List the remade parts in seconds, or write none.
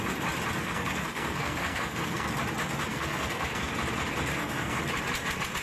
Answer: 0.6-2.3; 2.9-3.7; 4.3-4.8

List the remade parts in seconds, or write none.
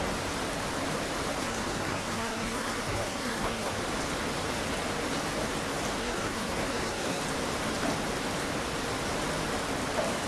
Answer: 1.4-3.7; 6.0-7.2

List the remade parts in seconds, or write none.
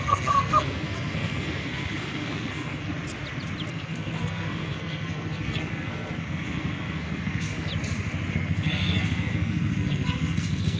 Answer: 0.0-2.9; 3.7-7.7; 8.3-10.8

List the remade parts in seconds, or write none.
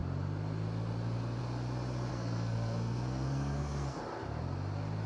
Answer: 2.1-4.0